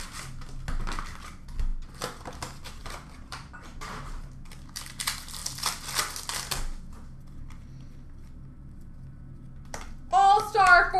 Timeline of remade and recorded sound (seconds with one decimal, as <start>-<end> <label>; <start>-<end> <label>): 0.0-2.8 recorded; 2.8-4.3 remade; 4.3-11.0 recorded